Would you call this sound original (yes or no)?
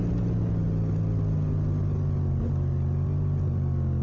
yes